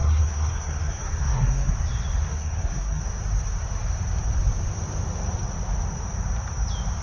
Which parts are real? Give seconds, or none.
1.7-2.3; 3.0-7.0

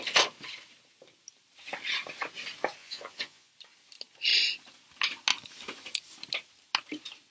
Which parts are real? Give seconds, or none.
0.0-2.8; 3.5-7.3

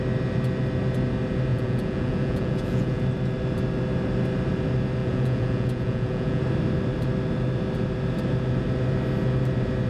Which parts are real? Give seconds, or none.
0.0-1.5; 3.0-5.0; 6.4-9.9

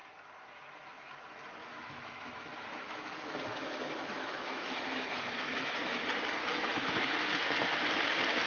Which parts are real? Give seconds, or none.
0.0-1.6; 6.0-6.4; 6.9-8.5

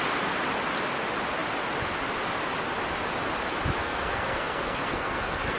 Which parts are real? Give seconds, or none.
0.0-3.8

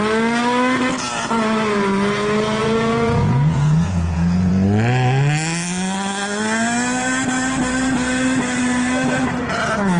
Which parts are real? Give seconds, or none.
0.0-2.6; 4.5-10.0

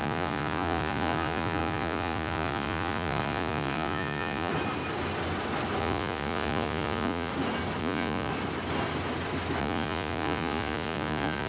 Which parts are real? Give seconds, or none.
4.5-5.8; 7.3-7.8; 8.3-9.6